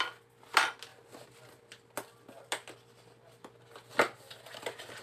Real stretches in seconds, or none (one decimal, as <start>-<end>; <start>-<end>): 0.0-5.0